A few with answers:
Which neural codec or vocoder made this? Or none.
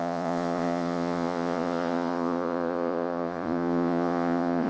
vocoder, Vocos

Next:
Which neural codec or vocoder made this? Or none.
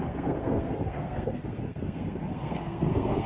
codec, SNAC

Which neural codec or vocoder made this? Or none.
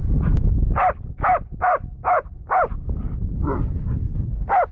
none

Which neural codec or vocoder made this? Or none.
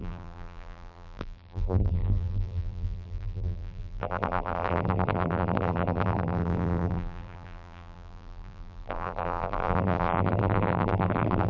vocoder, BigVGAN v2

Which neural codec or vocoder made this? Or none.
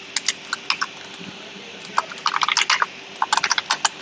none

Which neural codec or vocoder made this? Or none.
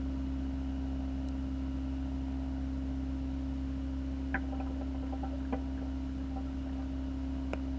none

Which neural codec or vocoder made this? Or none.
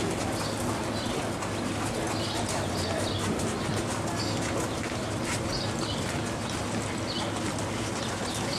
none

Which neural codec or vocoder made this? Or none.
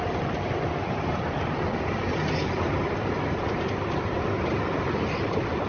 none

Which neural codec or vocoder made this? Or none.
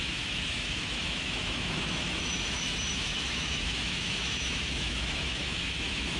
autoencoder, DAC-VAE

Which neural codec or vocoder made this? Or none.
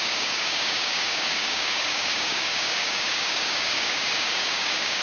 codec, DAC